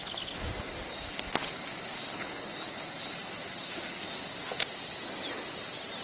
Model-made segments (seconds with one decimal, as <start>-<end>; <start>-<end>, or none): none